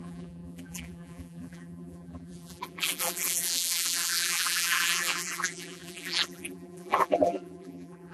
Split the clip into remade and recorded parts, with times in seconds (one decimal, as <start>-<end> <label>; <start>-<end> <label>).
0.0-8.1 remade